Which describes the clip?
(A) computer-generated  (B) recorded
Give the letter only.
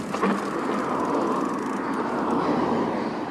B